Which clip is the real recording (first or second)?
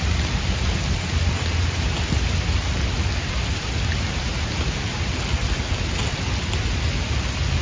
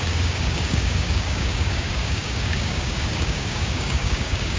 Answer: first